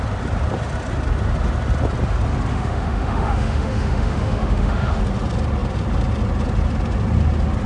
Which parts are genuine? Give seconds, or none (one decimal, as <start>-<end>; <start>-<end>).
0.0-2.5; 5.0-7.7